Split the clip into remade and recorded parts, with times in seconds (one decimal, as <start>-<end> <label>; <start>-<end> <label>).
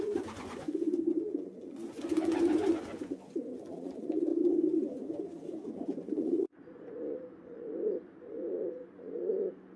0.0-9.8 remade